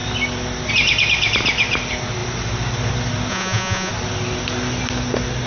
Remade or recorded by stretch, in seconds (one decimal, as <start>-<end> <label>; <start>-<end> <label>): 0.0-3.3 recorded; 3.3-3.9 remade; 3.9-5.5 recorded